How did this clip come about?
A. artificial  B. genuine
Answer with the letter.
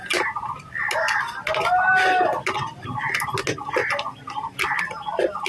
B